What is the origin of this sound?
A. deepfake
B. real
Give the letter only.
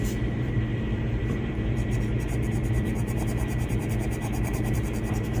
A